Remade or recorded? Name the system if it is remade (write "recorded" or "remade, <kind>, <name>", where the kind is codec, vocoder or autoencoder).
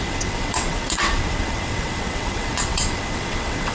remade, vocoder, WaveNeXt